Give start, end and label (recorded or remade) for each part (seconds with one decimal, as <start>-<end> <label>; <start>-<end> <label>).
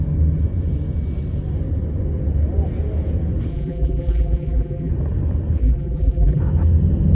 0.0-3.5 recorded; 3.5-4.9 remade; 4.9-5.6 recorded; 5.6-6.4 remade; 6.4-7.1 recorded